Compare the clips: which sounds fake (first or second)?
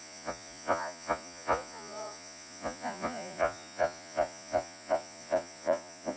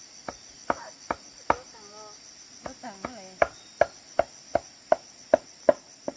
first